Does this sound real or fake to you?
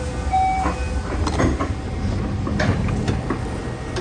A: real